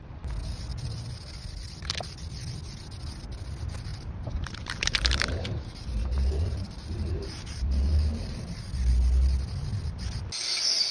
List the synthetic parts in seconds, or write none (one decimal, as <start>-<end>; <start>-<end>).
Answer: 0.7-1.4; 3.9-8.6